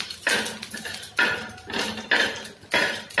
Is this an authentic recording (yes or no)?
yes